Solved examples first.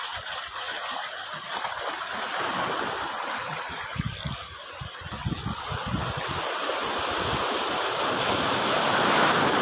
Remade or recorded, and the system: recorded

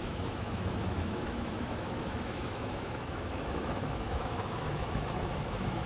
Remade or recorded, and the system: remade, autoencoder, DAC-VAE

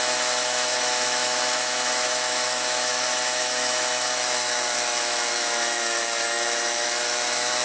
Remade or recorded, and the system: remade, autoencoder, DAC-VAE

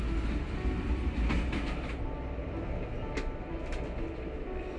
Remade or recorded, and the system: recorded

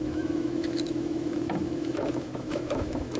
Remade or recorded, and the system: remade, autoencoder, DAC-VAE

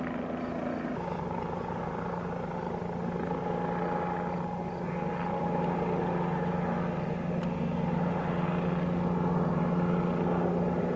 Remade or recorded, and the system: recorded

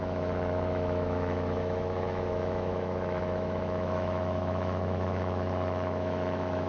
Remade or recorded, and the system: remade, autoencoder, DAC-VAE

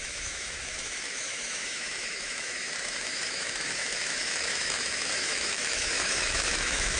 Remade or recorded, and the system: remade, autoencoder, DAC-VAE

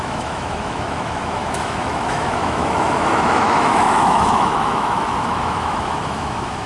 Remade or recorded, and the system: remade, autoencoder, DAC-VAE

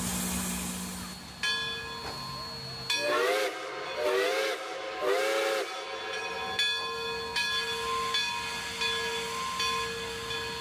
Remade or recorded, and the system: recorded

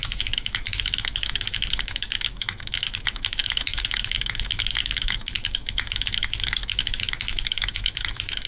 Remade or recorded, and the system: remade, autoencoder, DAC-VAE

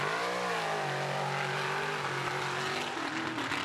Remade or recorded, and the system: recorded